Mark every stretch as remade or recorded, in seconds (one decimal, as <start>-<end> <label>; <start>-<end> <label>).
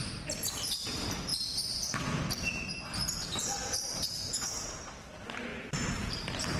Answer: 0.0-5.5 recorded; 5.5-6.6 remade